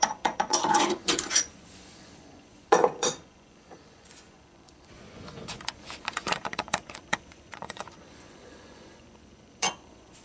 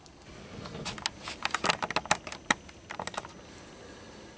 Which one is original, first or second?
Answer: second